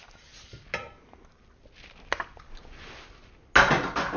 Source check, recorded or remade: recorded